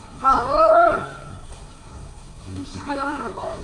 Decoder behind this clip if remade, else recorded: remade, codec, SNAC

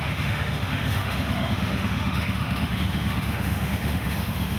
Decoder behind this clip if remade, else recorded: remade, autoencoder, DAC-VAE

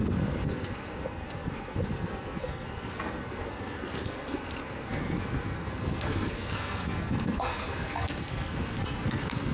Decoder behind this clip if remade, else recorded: remade, codec, SNAC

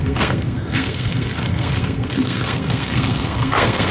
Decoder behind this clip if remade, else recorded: remade, codec, SNAC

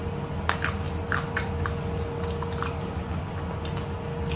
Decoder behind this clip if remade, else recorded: recorded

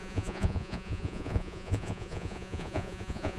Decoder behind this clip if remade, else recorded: remade, vocoder, Vocos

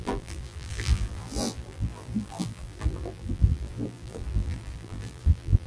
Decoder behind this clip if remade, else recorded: remade, vocoder, BigVGAN v2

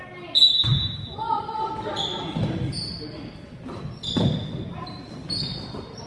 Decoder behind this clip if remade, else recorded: recorded